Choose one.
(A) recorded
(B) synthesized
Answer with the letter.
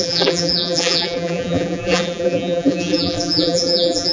B